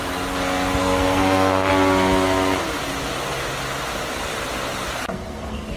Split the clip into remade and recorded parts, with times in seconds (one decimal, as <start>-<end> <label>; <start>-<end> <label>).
0.0-0.8 recorded; 0.8-1.7 remade; 1.7-5.0 recorded; 5.0-5.8 remade